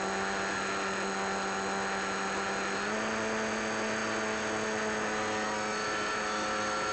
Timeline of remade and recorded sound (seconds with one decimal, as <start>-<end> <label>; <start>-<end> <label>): 0.0-6.9 recorded